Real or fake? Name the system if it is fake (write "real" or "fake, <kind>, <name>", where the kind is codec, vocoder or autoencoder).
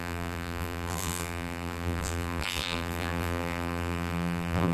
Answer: fake, vocoder, BigVGAN v2